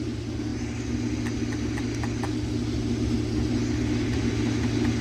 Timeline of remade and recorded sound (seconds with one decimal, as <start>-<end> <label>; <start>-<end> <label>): 0.0-5.0 recorded